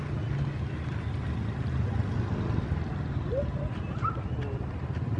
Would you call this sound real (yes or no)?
yes